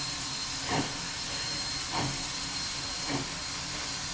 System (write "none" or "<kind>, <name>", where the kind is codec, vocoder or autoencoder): none